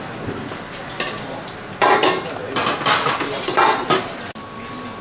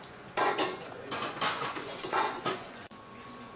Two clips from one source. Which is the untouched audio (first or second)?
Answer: first